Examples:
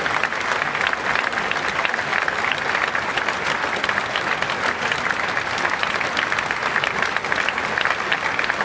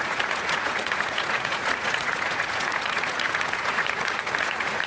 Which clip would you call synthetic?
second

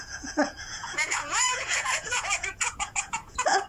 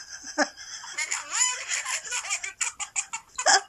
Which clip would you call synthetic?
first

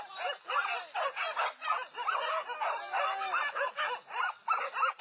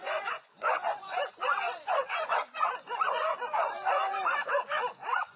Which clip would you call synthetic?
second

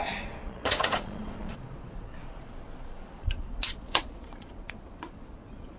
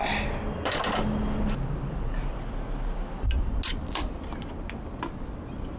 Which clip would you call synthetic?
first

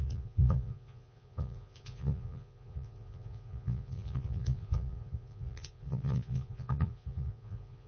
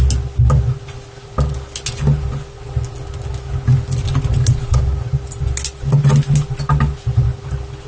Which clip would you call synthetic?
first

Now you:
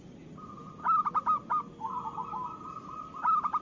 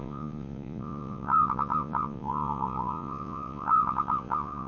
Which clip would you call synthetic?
second